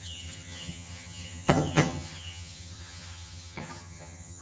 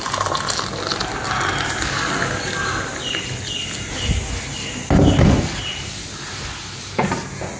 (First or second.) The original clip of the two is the second